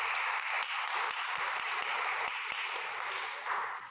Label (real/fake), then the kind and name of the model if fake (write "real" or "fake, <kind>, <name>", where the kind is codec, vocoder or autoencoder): real